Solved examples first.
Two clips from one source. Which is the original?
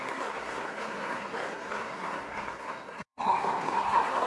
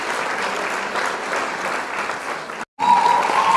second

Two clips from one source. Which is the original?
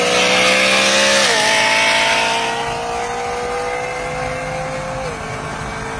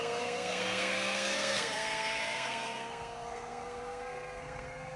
first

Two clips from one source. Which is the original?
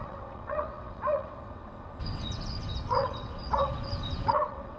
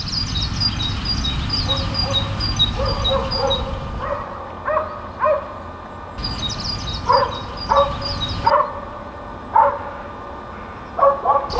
second